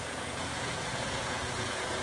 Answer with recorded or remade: remade